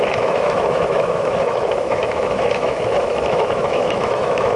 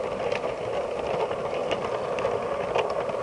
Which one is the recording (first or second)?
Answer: second